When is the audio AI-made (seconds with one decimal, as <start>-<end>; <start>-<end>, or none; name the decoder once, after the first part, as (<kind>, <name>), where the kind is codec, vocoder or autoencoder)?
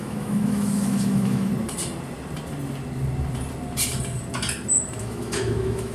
0.0-1.5 (autoencoder, DAC-VAE); 5.0-5.9